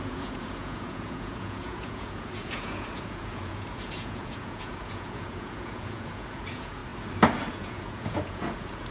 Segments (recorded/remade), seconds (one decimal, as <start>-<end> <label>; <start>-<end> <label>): 0.0-6.8 remade; 6.8-7.5 recorded; 7.5-8.9 remade